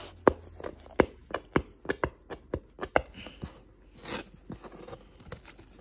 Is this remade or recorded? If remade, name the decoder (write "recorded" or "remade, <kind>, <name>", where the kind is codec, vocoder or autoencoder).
recorded